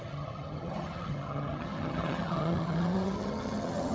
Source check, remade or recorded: remade